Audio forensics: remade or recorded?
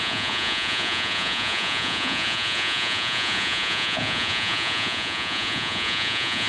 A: remade